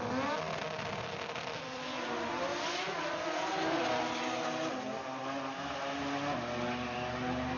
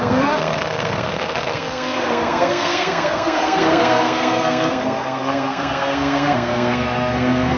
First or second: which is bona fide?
first